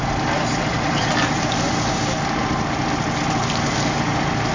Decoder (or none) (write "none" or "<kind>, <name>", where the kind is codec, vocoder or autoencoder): none